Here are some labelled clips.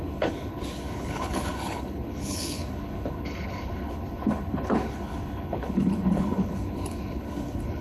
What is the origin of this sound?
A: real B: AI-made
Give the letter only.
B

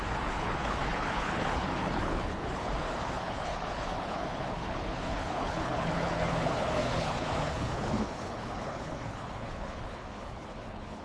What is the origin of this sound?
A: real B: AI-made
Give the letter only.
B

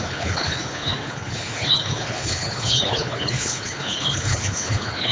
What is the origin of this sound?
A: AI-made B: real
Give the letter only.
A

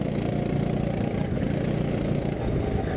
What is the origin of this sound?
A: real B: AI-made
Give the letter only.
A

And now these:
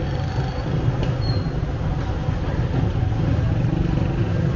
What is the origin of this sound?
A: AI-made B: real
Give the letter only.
B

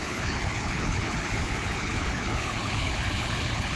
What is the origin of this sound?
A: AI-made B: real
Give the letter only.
A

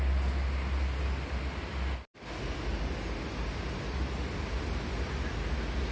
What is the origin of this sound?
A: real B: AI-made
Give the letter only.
A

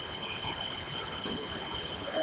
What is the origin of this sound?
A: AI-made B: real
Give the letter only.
A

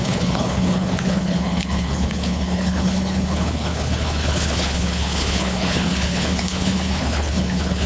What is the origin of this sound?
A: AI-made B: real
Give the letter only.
A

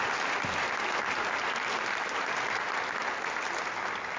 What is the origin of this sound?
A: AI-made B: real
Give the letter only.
B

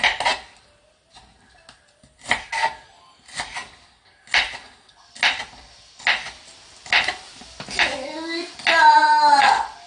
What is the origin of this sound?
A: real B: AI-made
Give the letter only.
A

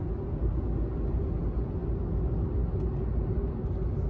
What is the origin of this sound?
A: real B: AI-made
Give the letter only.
A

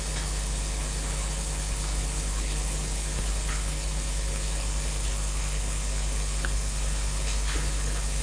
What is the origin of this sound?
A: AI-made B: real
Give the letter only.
A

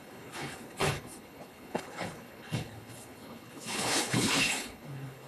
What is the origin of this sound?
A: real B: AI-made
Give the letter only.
B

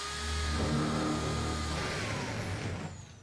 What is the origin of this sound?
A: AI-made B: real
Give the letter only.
B